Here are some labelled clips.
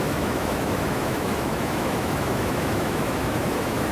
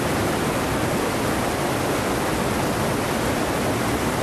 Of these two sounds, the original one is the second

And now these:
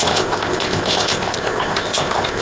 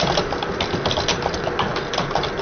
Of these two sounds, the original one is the second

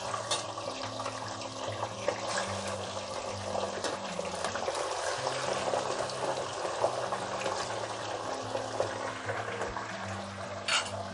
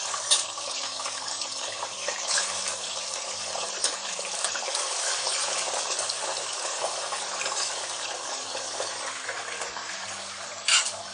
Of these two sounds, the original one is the first